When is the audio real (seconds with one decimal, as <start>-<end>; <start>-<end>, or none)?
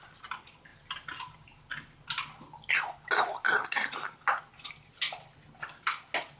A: 0.0-6.4